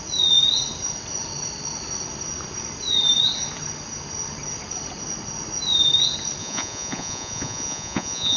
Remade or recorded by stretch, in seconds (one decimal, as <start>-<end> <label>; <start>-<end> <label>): 0.0-6.4 recorded; 6.4-8.4 remade